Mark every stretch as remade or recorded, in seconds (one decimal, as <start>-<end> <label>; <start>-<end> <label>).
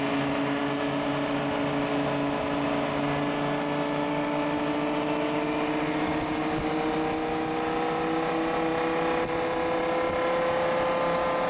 0.0-11.5 recorded